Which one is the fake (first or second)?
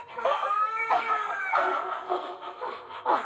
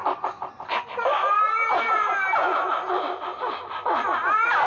first